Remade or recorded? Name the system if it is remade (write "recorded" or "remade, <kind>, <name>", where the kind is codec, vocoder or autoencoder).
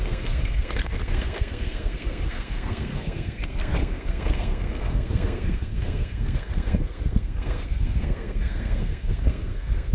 remade, codec, SNAC